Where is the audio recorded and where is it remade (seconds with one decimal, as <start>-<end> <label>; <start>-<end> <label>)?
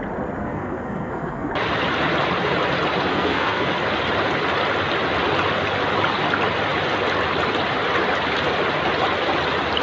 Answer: 0.0-0.4 recorded; 0.4-1.5 remade; 1.5-3.1 recorded; 3.1-3.7 remade; 3.7-9.8 recorded